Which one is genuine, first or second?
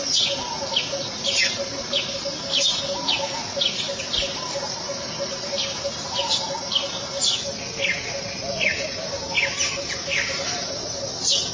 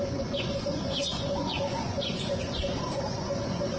first